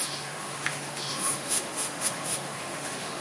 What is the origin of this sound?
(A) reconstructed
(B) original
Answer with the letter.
A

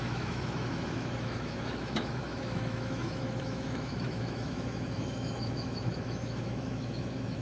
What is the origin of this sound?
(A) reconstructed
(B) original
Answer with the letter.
A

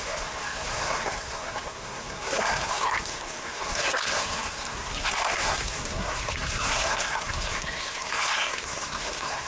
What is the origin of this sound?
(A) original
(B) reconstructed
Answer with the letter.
B